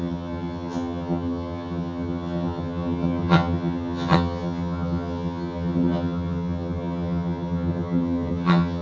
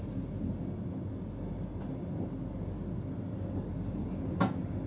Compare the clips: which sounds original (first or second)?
second